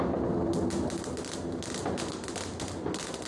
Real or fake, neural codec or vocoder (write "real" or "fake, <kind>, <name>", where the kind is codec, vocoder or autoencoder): real